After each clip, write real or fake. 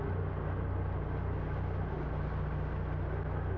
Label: real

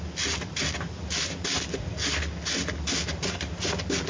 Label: real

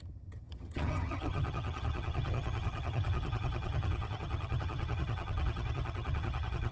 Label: fake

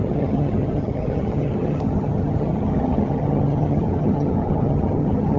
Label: fake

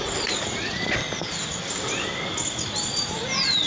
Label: real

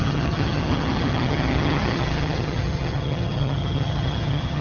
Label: fake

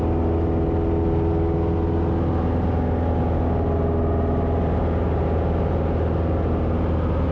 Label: real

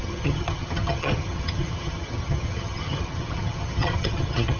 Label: fake